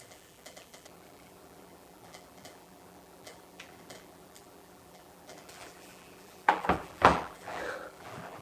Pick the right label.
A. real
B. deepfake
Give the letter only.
B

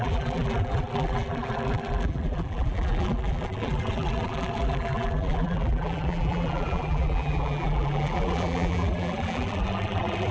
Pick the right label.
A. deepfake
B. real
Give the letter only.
A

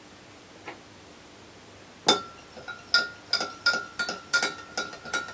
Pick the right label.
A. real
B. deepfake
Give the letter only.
A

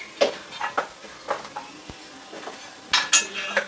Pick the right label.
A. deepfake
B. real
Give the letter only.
B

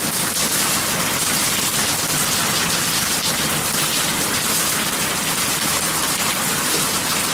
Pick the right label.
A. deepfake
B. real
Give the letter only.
B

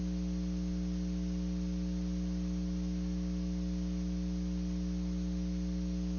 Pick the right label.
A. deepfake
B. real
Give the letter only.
B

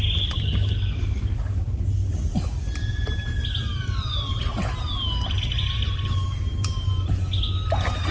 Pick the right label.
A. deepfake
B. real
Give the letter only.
B